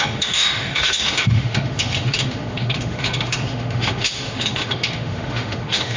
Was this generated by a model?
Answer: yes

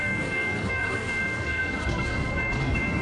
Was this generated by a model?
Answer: yes